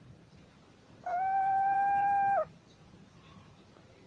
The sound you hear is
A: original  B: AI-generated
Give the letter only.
B